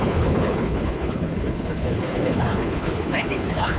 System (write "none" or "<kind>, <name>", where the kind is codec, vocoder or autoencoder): codec, HILCodec